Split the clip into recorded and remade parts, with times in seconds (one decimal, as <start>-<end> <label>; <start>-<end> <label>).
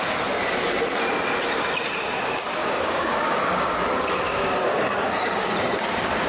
0.0-2.6 recorded; 2.6-5.5 remade; 5.5-6.3 recorded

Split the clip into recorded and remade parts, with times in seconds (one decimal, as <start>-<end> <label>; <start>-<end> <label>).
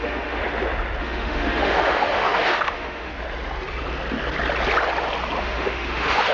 0.0-0.4 remade; 0.4-1.0 recorded; 1.0-3.1 remade; 3.1-5.4 recorded; 5.4-6.3 remade